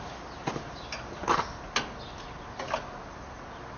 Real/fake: real